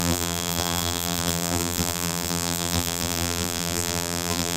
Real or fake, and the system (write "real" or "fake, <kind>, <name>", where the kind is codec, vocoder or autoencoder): fake, vocoder, BigVGAN v2